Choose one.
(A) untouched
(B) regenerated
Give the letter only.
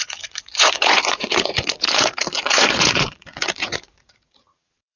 B